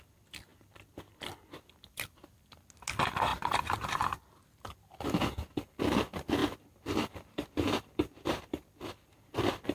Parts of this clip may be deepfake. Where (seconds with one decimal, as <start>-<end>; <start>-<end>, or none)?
0.5-2.4; 3.3-4.3; 6.4-8.8